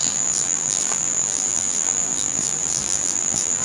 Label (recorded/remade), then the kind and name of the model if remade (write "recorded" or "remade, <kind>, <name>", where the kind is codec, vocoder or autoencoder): remade, vocoder, BigVGAN v2